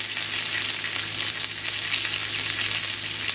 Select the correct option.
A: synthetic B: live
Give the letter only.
B